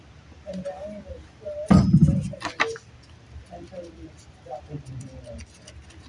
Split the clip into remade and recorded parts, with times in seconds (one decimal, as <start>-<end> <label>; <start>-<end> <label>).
0.0-6.1 recorded